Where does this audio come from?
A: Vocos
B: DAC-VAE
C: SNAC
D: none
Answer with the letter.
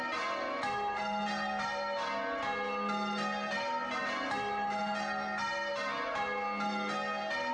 D